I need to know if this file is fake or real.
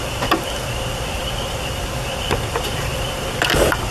fake